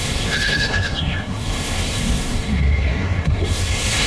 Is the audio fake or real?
fake